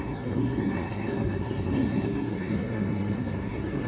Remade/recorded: remade